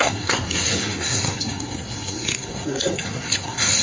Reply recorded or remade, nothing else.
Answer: remade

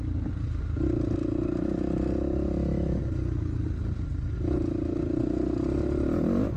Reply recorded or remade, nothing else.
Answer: recorded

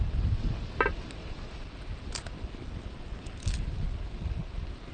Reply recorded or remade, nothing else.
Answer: recorded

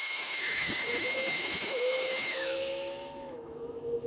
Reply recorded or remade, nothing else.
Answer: remade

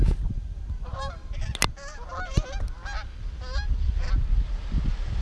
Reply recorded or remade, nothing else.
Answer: recorded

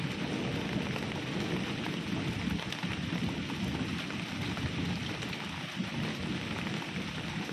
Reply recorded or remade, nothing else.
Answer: recorded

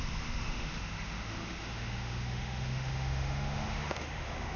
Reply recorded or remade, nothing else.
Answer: remade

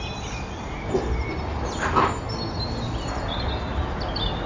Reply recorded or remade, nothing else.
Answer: recorded